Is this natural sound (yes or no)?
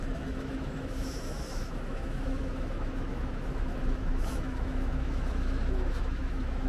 no